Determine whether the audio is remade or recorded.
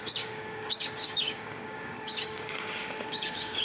remade